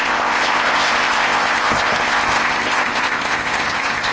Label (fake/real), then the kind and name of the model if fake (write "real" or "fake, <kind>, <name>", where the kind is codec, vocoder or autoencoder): fake, codec, ZipCodec